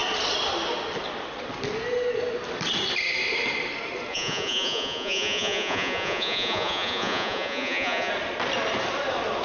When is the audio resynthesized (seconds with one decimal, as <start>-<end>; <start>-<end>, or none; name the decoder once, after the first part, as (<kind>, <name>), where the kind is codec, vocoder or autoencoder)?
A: 4.1-8.1 (vocoder, Vocos)